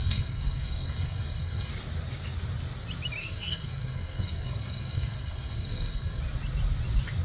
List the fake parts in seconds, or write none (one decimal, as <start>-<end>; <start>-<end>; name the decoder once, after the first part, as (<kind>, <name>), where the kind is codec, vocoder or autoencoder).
0.0-1.7 (codec, SNAC); 3.2-6.2